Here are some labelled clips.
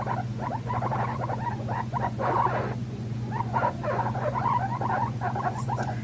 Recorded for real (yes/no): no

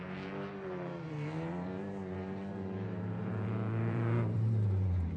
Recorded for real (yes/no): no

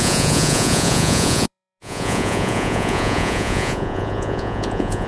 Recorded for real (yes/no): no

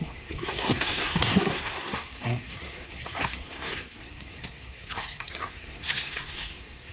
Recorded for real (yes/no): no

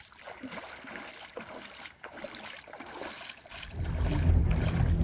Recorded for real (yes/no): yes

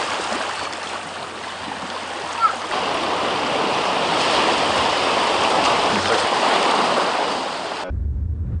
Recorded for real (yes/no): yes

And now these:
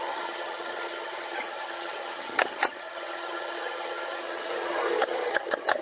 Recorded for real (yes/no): no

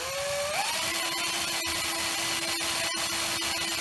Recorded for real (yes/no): yes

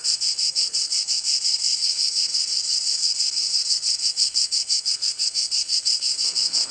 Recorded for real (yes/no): no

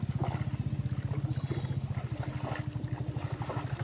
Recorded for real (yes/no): yes